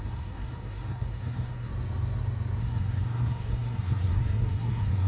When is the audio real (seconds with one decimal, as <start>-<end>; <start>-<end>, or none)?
1.7-2.6